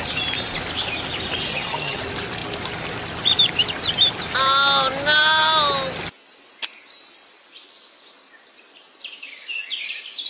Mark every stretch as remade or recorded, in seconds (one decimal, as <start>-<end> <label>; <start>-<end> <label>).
0.0-1.5 recorded; 1.5-2.0 remade; 2.0-10.3 recorded